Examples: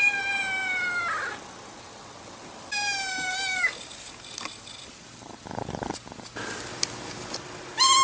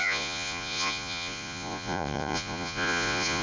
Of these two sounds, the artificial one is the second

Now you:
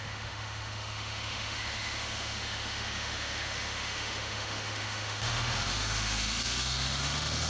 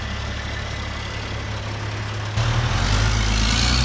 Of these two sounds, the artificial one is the first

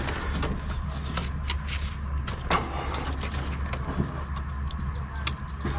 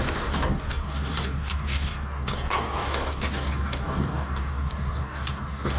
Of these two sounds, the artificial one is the second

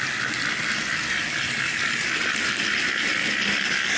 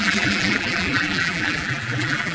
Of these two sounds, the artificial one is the second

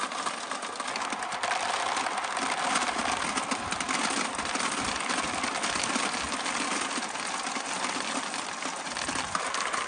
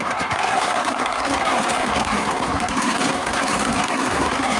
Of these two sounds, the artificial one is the second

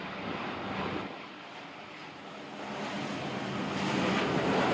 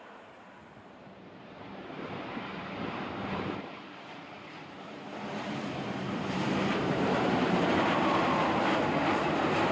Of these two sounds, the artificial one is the second